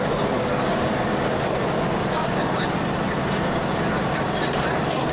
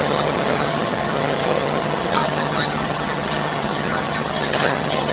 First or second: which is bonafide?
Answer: first